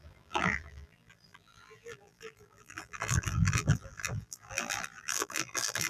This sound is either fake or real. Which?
fake